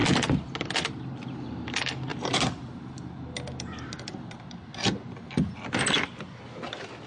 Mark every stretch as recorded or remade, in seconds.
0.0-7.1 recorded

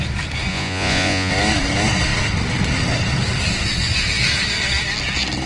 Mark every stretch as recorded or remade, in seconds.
0.0-0.5 recorded; 0.5-1.3 remade; 1.3-5.5 recorded

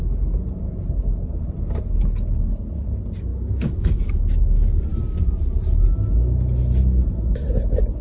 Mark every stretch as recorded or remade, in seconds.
0.0-3.3 recorded; 3.3-4.1 remade; 4.1-8.0 recorded

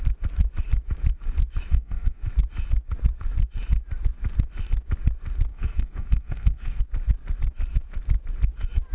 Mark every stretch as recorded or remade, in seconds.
0.0-1.7 recorded; 1.7-2.3 remade; 2.3-5.5 recorded; 5.5-6.8 remade; 6.8-8.9 recorded

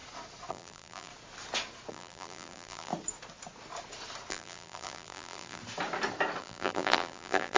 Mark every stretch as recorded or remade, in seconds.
0.0-0.5 recorded; 0.5-1.1 remade; 1.1-1.9 recorded; 1.9-2.9 remade; 2.9-4.3 recorded; 4.3-5.6 remade; 5.6-6.4 recorded; 6.4-7.6 remade